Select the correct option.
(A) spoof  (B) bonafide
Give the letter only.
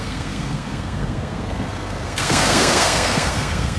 A